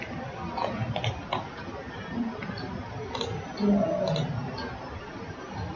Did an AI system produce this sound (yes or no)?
no